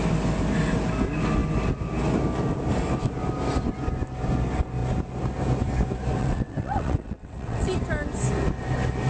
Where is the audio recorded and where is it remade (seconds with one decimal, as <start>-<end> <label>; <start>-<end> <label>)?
0.0-6.2 recorded; 6.2-7.7 remade; 7.7-9.1 recorded